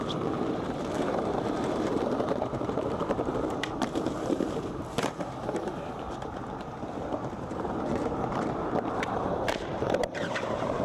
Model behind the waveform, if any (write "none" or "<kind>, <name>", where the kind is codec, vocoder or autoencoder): vocoder, BigVGAN v2